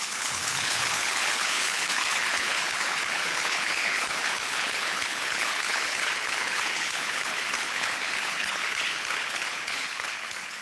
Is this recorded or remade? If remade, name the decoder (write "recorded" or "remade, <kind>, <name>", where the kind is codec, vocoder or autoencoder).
remade, codec, HILCodec